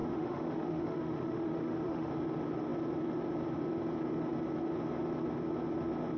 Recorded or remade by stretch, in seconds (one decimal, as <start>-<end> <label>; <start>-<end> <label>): 0.0-2.1 remade; 2.1-6.2 recorded